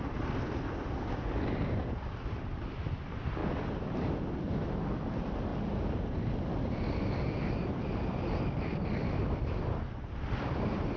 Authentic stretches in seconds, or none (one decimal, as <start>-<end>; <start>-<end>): 3.4-5.1; 5.5-6.6